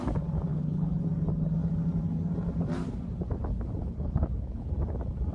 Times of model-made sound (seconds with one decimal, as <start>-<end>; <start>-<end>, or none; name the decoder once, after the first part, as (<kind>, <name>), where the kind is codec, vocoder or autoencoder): 0.5-1.0 (codec, HILCodec); 3.8-4.7